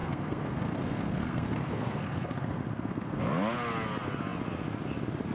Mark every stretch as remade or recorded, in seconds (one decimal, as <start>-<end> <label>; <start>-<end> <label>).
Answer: 0.0-3.2 remade; 3.2-5.3 recorded